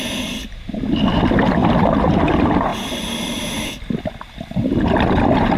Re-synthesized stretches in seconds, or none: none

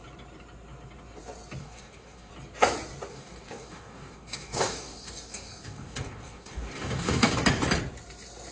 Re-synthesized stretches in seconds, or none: 1.6-2.3 (codec, DAC); 3.1-7.3

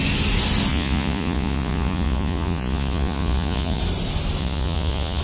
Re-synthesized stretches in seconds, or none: 0.7-3.8 (vocoder, Vocos); 4.4-5.2

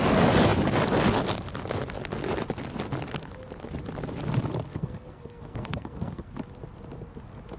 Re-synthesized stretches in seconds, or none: 4.7-6.4 (codec, SNAC)

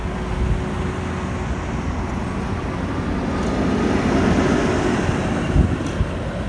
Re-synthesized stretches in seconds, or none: none

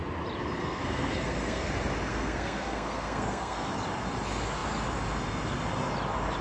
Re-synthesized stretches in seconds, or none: 0.6-1.7 (codec, SNAC); 2.1-3.7